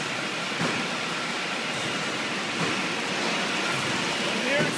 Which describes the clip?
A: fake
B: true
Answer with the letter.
B